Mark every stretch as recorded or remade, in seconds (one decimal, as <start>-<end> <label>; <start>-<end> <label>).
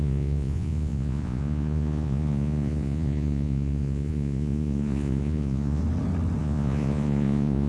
0.0-5.8 remade; 5.8-6.4 recorded; 6.4-7.7 remade